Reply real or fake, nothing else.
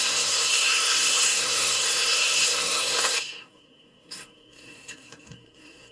fake